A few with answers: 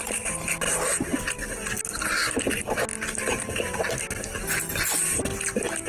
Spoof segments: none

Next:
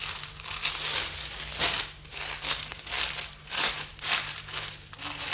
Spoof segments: 2.1-2.9 (codec, SNAC)

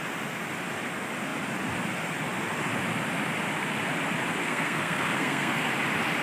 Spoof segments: 4.4-5.7 (codec, SNAC)